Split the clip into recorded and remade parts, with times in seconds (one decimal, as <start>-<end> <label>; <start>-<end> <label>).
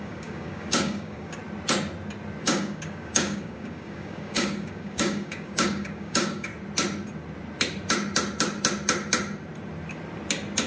0.0-1.4 remade; 1.4-2.4 recorded; 2.4-6.5 remade; 6.5-10.7 recorded